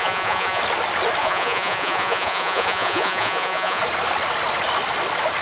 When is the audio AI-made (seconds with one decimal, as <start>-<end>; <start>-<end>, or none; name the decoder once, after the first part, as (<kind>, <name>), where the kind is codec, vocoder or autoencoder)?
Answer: 0.0-0.6 (vocoder, Vocos); 1.2-3.8